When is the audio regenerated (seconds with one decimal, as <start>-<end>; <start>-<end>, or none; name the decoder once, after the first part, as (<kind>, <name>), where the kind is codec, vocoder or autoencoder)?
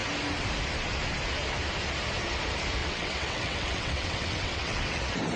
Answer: 2.8-5.0 (vocoder, WaveNeXt)